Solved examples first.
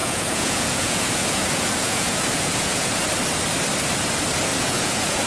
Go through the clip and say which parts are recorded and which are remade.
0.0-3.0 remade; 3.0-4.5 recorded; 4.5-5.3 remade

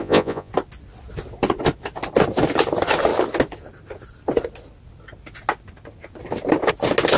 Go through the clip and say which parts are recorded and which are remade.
0.0-0.5 remade; 0.5-7.2 recorded

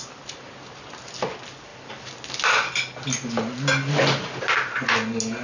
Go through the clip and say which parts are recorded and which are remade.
0.0-5.4 recorded

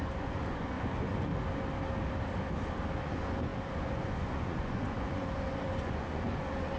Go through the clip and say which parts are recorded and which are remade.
0.0-1.3 remade; 1.3-3.0 recorded; 3.0-6.8 remade

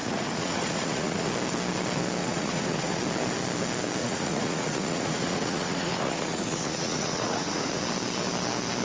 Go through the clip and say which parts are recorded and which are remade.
0.0-1.3 remade; 1.3-2.2 recorded; 2.2-3.0 remade; 3.0-4.0 recorded; 4.0-7.8 remade; 7.8-8.8 recorded